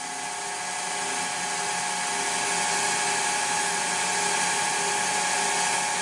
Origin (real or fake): real